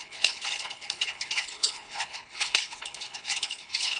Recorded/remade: remade